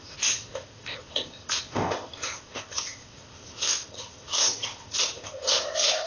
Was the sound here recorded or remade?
remade